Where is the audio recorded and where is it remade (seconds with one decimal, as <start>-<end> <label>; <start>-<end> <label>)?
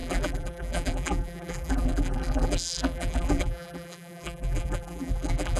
0.0-5.6 remade